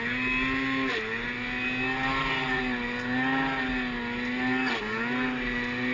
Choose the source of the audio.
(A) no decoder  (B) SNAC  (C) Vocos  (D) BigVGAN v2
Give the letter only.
A